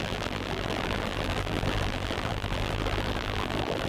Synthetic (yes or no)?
yes